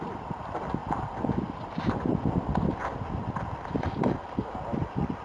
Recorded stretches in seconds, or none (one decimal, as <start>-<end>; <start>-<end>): 0.0-5.2